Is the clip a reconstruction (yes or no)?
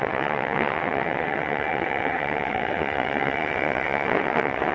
yes